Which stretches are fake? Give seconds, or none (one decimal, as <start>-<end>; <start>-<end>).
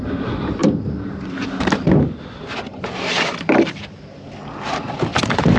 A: 0.6-1.2; 2.7-3.8; 5.1-5.6